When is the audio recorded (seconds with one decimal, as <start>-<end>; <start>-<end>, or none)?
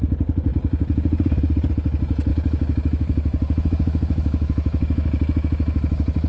0.0-2.3